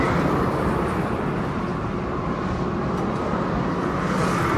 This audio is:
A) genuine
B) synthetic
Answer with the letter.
A